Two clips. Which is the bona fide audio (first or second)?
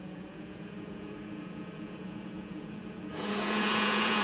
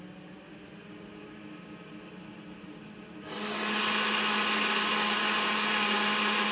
second